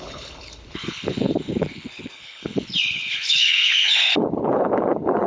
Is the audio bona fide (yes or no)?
no